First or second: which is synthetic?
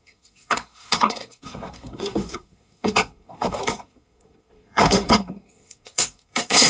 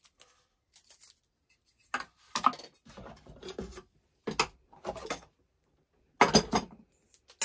first